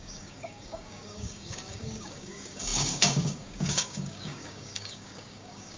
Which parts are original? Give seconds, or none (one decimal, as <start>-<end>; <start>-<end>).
none